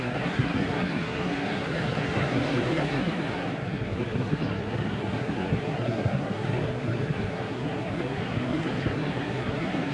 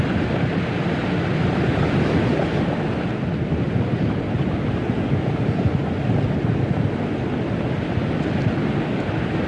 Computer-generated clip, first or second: first